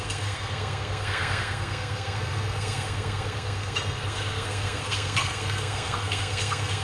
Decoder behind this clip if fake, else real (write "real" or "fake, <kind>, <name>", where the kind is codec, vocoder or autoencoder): fake, codec, SNAC